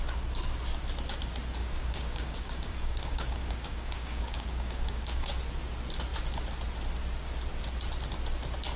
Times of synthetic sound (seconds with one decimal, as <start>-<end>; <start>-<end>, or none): 1.6-5.4

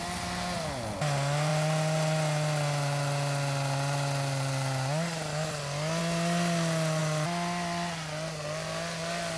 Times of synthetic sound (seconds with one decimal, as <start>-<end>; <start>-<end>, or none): none

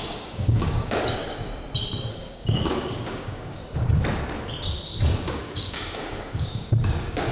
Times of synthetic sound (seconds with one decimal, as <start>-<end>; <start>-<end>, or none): 0.0-1.5; 2.1-3.6; 5.3-7.3

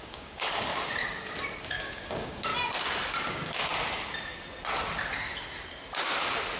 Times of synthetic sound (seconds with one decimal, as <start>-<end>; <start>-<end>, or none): 0.0-0.7; 1.6-2.5; 3.3-3.7